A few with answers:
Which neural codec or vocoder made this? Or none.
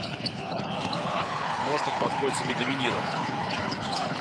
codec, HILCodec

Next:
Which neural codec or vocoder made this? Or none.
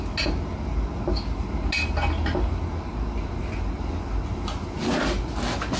none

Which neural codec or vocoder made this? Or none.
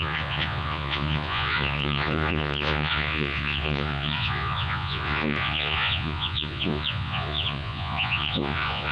vocoder, Vocos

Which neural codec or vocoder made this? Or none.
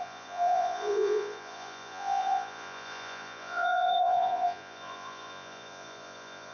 vocoder, Vocos